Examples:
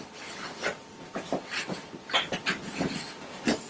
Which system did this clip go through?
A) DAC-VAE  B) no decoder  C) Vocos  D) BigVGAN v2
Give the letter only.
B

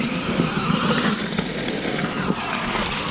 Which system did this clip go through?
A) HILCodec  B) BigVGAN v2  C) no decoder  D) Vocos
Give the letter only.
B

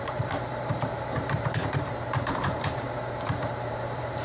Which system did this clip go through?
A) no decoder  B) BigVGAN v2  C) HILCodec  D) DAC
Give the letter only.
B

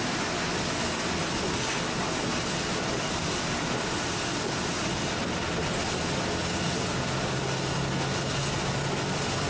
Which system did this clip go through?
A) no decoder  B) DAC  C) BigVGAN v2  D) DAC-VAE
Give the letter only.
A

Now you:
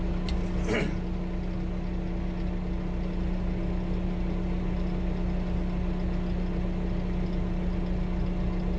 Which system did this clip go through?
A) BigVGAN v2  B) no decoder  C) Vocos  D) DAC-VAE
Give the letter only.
B